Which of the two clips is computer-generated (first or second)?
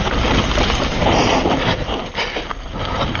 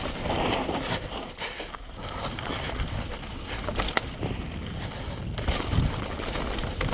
second